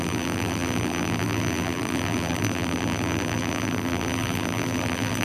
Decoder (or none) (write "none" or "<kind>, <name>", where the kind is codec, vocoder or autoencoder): vocoder, BigVGAN v2